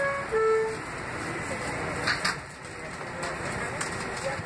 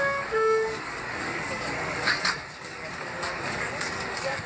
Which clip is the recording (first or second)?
first